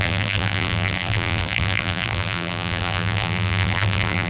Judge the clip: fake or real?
fake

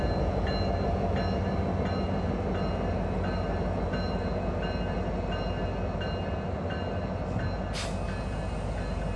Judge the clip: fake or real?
real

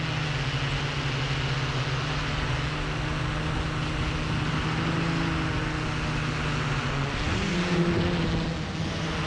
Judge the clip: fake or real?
real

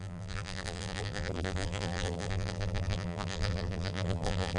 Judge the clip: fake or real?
fake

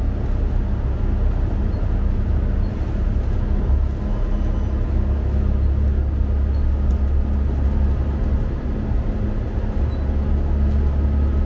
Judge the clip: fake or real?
real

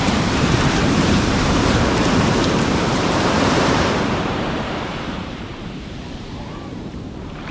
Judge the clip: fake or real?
fake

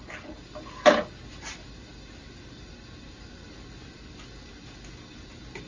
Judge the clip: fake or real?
real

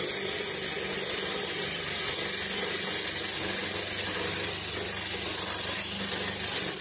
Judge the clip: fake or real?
real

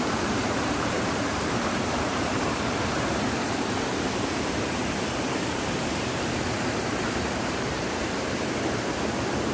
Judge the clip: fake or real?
fake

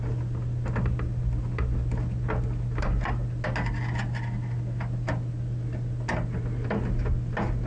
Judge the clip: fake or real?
real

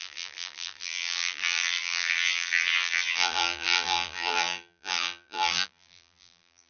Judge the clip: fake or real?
fake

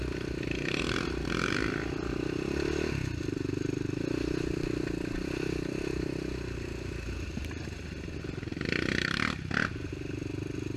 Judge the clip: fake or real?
real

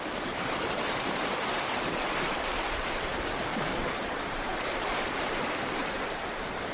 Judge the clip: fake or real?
fake